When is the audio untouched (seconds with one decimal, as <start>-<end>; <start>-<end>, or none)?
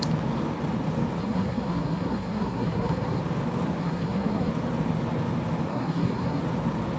0.0-1.2; 3.2-3.8; 4.5-5.7; 6.4-7.0